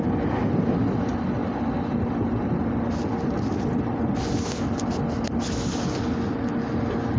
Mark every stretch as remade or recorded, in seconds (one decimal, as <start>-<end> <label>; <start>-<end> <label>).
0.0-7.2 recorded